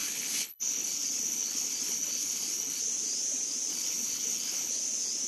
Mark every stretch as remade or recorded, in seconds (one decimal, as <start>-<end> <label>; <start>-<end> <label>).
0.0-2.8 remade; 2.8-3.7 recorded; 3.7-4.7 remade; 4.7-5.3 recorded